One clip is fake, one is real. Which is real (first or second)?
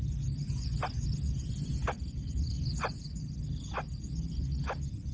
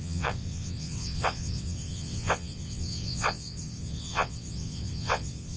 first